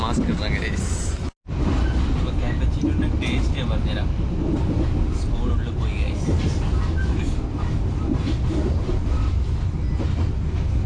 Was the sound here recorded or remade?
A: recorded